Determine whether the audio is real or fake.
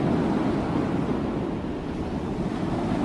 real